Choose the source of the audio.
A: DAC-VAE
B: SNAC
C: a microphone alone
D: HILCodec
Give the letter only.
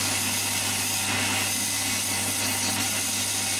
C